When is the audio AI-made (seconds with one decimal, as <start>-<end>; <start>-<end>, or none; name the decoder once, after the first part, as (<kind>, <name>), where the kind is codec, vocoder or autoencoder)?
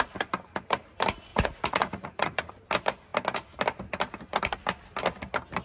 1.3-2.5 (vocoder, Vocos)